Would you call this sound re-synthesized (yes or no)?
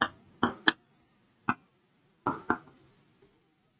no